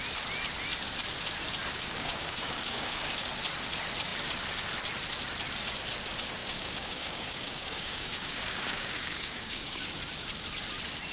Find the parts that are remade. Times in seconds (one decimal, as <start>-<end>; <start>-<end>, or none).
1.6-3.3; 6.4-10.0